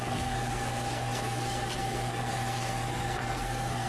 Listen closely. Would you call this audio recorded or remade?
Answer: remade